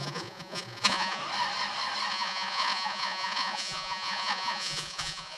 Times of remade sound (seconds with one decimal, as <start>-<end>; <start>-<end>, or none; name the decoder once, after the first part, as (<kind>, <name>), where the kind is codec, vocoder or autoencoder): 0.0-1.2 (vocoder, Vocos); 2.1-5.4